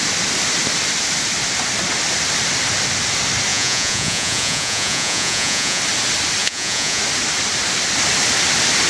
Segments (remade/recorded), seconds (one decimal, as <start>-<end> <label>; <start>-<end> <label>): 0.0-3.5 recorded; 3.5-5.8 remade; 5.8-6.4 recorded; 6.4-7.0 remade; 7.0-8.9 recorded